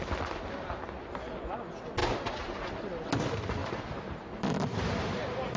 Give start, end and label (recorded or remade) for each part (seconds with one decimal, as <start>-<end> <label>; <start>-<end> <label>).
0.0-3.6 recorded; 3.6-5.6 remade

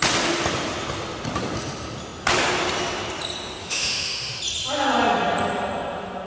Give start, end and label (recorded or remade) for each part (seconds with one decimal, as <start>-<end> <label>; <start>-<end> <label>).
0.0-3.6 recorded; 3.6-4.4 remade; 4.4-6.3 recorded